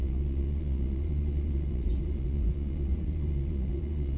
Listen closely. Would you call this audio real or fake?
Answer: fake